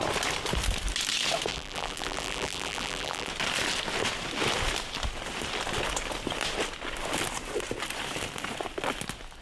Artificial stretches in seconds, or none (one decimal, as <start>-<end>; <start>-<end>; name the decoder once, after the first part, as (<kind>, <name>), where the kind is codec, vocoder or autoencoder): 1.5-3.3 (vocoder, BigVGAN v2)